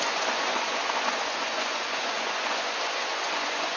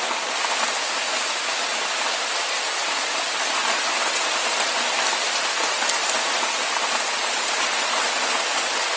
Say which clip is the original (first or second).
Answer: second